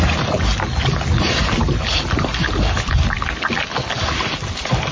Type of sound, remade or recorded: recorded